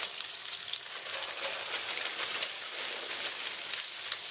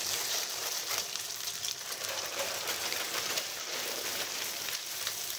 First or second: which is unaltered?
first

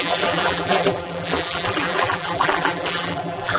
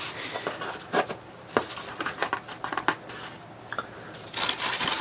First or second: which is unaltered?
second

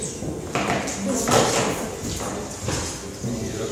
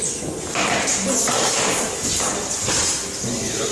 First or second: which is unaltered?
first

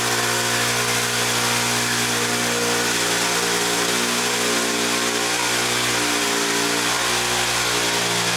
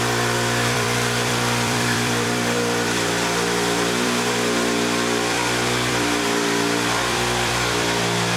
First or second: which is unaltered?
first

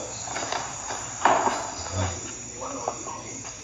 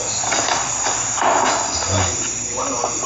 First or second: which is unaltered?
second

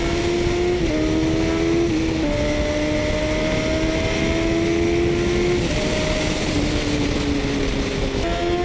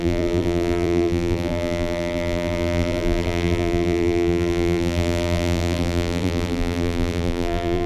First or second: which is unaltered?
first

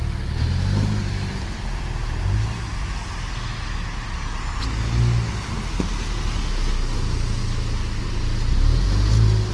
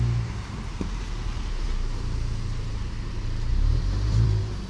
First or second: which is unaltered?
first